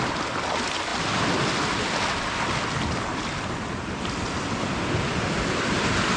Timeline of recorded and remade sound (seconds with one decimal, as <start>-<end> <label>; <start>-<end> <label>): 0.0-6.2 recorded